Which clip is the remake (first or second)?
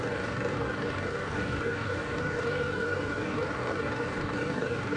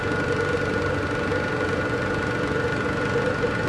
first